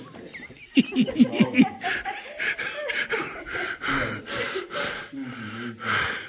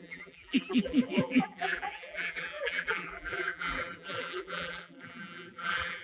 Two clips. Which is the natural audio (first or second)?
first